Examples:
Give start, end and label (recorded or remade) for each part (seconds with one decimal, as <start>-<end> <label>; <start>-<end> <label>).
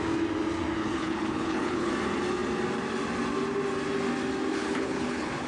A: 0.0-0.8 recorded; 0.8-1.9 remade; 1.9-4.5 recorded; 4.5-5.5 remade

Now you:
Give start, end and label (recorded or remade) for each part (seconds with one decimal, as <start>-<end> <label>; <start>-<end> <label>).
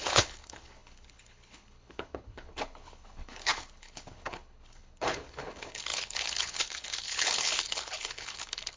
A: 0.0-8.8 remade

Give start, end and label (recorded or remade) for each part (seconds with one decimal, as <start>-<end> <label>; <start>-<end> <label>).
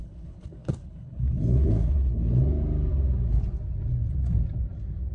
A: 0.0-2.4 remade; 2.4-5.1 recorded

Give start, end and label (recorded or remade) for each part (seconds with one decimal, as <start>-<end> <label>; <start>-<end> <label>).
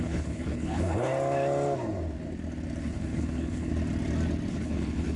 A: 0.0-1.1 remade; 1.1-2.8 recorded; 2.8-3.7 remade; 3.7-4.5 recorded; 4.5-5.2 remade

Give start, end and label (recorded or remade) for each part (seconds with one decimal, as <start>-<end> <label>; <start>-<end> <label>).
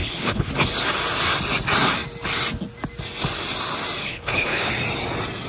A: 0.0-0.5 remade; 0.5-4.0 recorded; 4.0-4.7 remade; 4.7-5.5 recorded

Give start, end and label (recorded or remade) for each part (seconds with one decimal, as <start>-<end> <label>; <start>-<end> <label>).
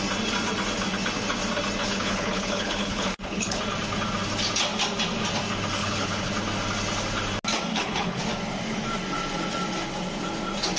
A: 0.0-1.8 recorded; 1.8-3.6 remade; 3.6-5.8 recorded; 5.8-6.3 remade; 6.3-7.7 recorded; 7.7-8.2 remade; 8.2-10.8 recorded